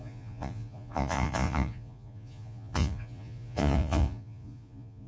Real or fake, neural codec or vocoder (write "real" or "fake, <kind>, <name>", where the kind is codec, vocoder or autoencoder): fake, vocoder, Vocos